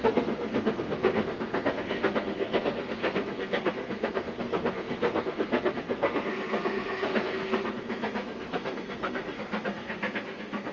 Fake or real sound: fake